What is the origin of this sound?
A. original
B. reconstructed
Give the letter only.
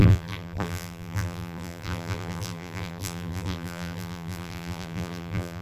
B